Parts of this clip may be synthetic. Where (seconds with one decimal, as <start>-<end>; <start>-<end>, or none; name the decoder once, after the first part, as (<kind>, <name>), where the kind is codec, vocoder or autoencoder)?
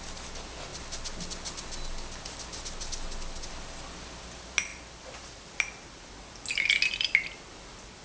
none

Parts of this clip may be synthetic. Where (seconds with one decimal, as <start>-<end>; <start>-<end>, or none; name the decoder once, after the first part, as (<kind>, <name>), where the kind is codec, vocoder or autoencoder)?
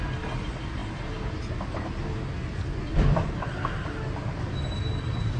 none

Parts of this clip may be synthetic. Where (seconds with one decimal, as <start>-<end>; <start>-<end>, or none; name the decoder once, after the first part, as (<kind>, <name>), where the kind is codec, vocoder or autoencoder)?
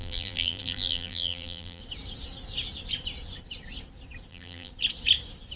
0.0-1.8 (vocoder, BigVGAN v2); 4.3-4.7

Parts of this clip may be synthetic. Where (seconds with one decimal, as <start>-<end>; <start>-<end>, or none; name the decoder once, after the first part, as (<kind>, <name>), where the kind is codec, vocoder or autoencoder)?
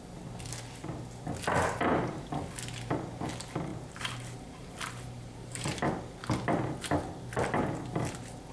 3.7-5.8 (vocoder, BigVGAN v2)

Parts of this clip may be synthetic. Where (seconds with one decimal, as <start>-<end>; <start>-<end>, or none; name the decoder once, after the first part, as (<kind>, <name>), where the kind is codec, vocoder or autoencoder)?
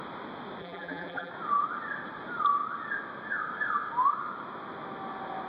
0.6-1.3 (vocoder, BigVGAN v2)